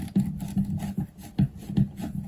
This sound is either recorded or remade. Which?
recorded